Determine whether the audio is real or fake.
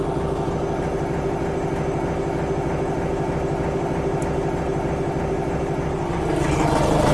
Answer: real